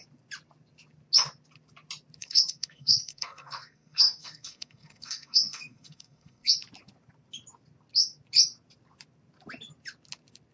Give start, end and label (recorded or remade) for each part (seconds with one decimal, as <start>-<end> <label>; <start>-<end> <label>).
0.0-2.2 recorded; 2.2-6.5 remade; 6.5-10.5 recorded